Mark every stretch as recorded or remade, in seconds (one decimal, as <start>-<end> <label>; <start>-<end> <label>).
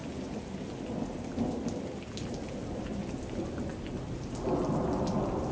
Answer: 0.0-5.5 recorded